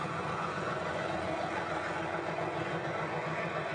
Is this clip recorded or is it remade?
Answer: remade